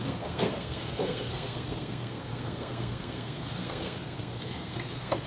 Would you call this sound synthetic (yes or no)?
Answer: yes